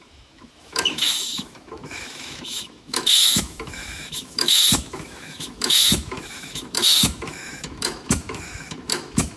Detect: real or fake fake